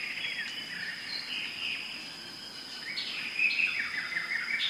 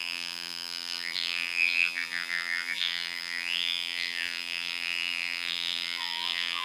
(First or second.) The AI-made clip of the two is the second